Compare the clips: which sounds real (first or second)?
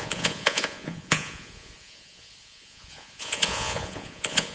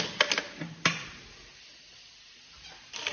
second